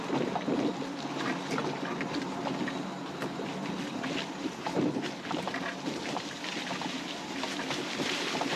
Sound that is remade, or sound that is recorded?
recorded